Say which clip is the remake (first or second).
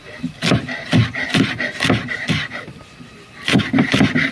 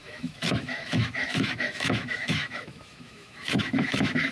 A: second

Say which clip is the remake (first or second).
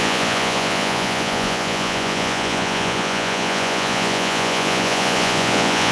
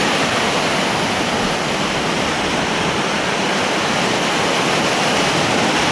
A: first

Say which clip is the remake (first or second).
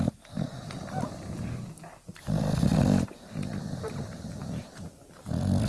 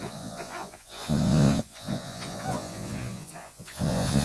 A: second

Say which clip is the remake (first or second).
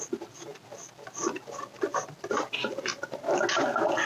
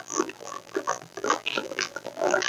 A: second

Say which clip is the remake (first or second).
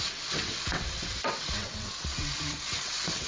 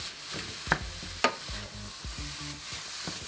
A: first